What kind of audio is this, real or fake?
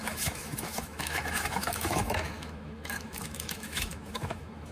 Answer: fake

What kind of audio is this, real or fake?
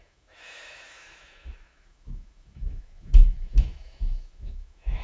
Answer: fake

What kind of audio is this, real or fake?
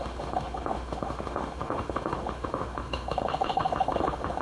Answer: fake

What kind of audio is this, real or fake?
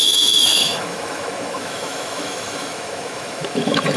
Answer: fake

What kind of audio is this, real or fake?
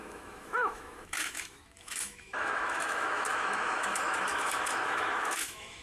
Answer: fake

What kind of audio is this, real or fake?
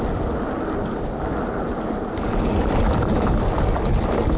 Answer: real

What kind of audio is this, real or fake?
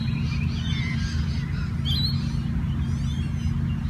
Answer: real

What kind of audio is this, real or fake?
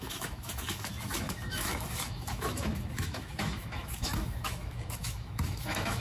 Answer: fake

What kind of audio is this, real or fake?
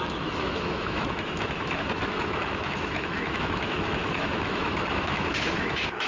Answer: fake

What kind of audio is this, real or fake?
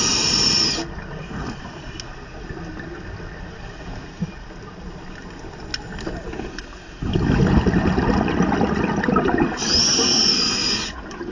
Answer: real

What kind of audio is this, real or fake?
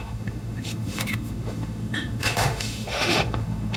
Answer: fake